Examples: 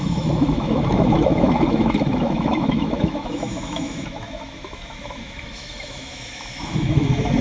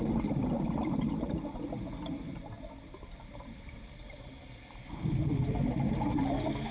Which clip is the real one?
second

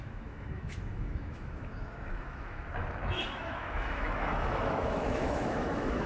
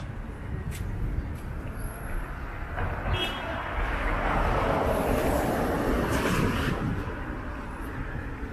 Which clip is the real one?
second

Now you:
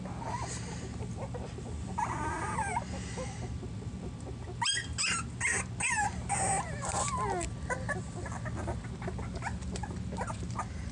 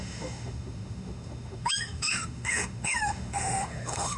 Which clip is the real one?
first